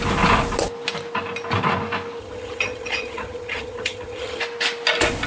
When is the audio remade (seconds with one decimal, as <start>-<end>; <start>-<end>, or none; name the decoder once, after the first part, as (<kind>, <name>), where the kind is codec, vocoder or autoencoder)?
2.2-4.4 (vocoder, HiFi-GAN)